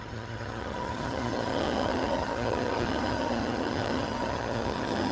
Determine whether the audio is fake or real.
fake